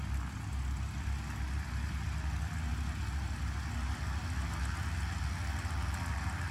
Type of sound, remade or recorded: recorded